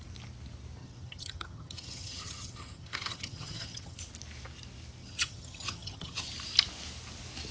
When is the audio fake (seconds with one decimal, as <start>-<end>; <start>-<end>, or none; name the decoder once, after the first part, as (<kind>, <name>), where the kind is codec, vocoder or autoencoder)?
0.8-4.0 (vocoder, HiFi-GAN); 5.0-6.3